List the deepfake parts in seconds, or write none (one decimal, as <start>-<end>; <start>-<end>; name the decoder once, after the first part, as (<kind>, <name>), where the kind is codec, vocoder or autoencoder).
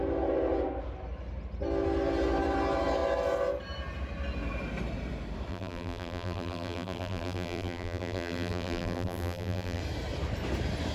5.5-9.8 (vocoder, BigVGAN v2)